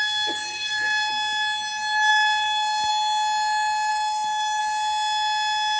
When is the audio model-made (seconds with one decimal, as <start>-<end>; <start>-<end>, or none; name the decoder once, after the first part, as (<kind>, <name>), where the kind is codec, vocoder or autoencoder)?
0.5-1.1 (codec, DAC); 2.1-2.9; 3.9-4.6